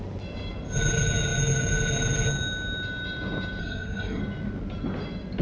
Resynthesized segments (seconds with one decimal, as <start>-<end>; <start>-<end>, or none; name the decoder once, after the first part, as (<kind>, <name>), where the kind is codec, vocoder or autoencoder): 3.6-4.2 (codec, SNAC)